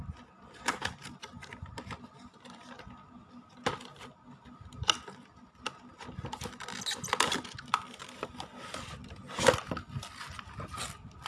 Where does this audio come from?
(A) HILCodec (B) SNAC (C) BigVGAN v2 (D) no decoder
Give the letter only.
D